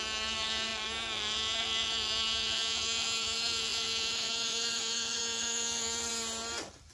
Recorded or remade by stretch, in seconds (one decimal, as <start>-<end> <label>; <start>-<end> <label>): 0.0-6.1 remade; 6.1-6.9 recorded